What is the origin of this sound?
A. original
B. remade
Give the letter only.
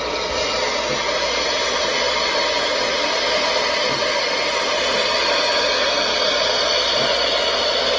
A